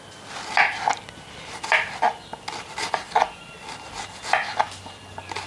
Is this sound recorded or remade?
recorded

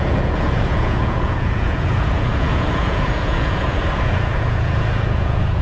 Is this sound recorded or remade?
remade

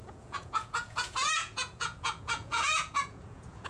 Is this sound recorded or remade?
remade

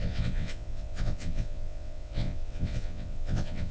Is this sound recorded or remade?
remade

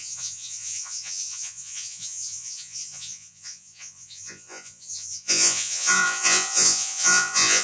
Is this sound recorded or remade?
remade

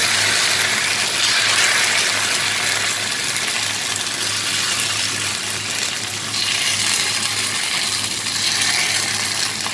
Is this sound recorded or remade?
recorded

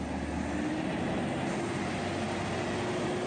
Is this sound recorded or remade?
recorded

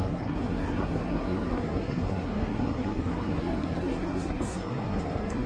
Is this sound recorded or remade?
remade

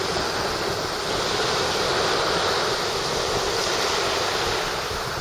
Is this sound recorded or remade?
recorded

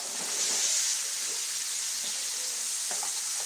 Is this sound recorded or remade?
recorded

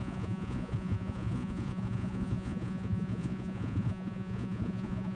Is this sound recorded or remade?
remade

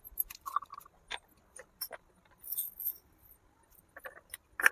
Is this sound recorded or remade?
recorded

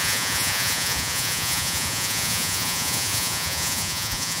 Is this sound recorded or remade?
remade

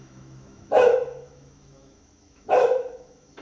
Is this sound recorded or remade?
remade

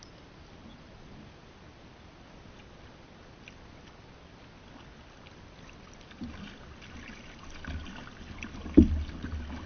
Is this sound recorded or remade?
recorded